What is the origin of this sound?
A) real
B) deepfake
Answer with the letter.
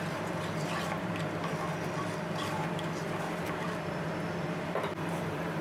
B